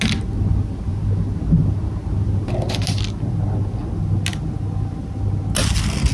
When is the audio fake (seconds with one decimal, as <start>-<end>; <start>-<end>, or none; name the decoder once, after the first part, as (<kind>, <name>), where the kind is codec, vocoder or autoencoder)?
none